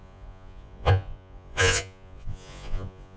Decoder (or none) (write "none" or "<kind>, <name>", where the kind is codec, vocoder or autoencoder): vocoder, Vocos